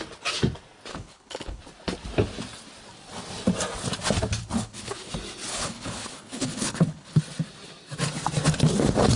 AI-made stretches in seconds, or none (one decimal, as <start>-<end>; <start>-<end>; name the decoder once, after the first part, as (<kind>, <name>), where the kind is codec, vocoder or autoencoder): 0.9-1.6 (codec, HILCodec); 4.4-5.1; 5.5-7.2

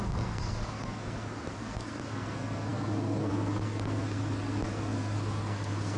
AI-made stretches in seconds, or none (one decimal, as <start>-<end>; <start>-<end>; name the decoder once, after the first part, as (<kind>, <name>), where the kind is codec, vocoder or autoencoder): 0.0-6.0 (codec, SNAC)

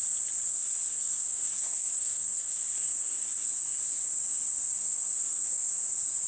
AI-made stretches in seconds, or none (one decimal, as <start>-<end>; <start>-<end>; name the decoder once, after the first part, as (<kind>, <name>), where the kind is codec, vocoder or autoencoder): 0.5-2.6 (codec, SNAC); 3.0-3.5; 4.7-5.7

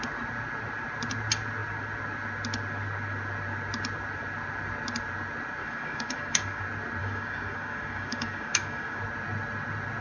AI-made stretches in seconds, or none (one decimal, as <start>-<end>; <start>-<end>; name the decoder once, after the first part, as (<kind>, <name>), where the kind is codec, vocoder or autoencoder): 5.6-6.6 (codec, DAC); 7.0-9.0

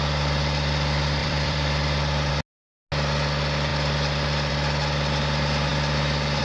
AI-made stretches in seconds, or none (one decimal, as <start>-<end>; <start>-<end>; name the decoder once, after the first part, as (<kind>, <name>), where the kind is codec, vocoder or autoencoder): 1.2-2.3 (vocoder, BigVGAN v2)

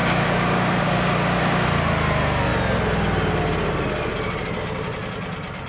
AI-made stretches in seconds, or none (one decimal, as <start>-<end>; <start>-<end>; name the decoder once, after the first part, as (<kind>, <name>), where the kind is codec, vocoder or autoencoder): 0.0-1.4 (codec, DAC)

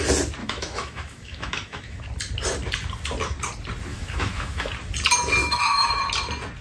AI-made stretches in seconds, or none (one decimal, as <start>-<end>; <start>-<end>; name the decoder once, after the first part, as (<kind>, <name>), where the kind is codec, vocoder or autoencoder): 0.4-2.0 (autoencoder, DAC-VAE); 3.9-4.7; 5.4-6.0